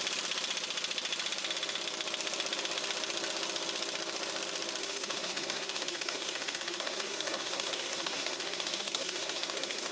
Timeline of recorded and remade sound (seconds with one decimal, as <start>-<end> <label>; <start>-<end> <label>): 0.0-4.8 recorded; 4.8-9.9 remade